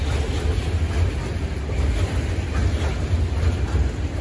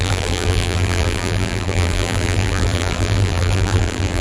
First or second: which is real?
first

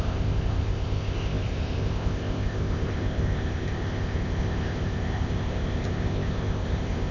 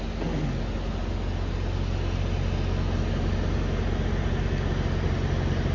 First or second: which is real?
second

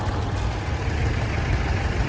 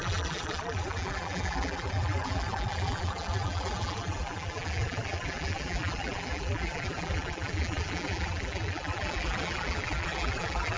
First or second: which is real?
first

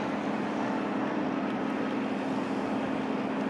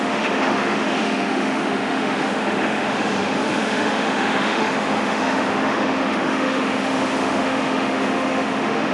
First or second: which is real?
first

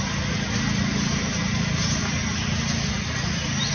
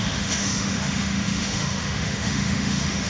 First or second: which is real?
first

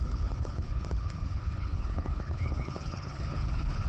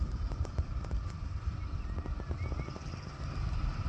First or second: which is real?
second